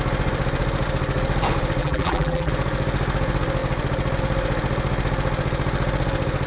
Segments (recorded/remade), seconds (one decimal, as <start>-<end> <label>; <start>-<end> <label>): 0.0-1.8 recorded; 1.8-2.5 remade; 2.5-6.5 recorded